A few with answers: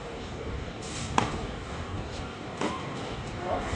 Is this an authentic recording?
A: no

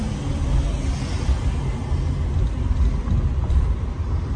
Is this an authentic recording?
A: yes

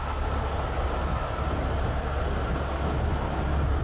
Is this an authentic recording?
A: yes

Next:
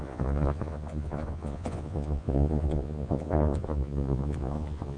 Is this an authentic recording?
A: no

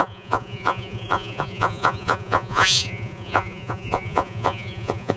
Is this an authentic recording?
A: no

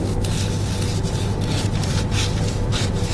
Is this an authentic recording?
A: yes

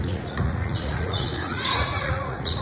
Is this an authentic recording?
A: no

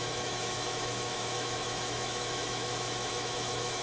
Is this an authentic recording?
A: no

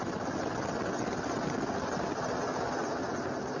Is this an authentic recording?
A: yes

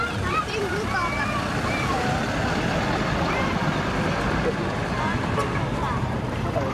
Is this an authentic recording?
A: no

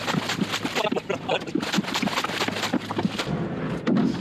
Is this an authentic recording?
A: yes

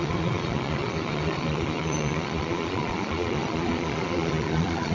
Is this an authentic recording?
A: no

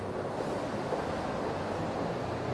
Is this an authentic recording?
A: yes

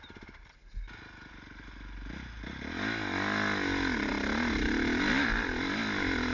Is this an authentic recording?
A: yes